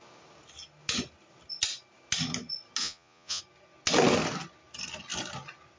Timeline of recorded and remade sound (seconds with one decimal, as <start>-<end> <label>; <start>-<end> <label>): 0.0-2.8 recorded; 2.8-3.4 remade; 3.4-5.8 recorded

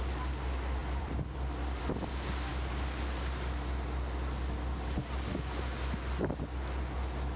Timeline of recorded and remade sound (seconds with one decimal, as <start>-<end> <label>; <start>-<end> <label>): 0.0-0.8 recorded; 0.8-1.8 remade; 1.8-7.4 recorded

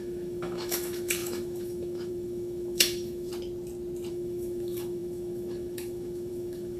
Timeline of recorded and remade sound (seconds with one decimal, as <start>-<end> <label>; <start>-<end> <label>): 0.0-3.3 remade; 3.3-4.1 recorded; 4.1-6.8 remade

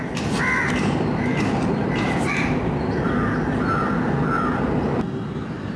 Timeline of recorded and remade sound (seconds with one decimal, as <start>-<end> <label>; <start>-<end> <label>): 0.0-5.8 recorded

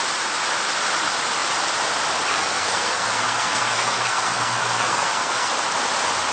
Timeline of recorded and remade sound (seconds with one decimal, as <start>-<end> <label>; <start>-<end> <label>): 0.0-2.3 recorded; 2.3-5.5 remade; 5.5-6.3 recorded

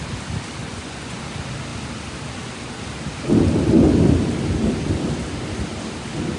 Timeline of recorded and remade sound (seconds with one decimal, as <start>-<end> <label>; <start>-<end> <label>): 0.0-0.6 recorded; 0.6-1.2 remade; 1.2-6.4 recorded

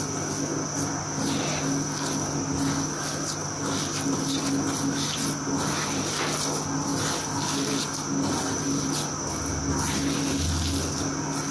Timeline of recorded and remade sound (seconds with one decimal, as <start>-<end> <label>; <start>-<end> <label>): 0.0-11.5 recorded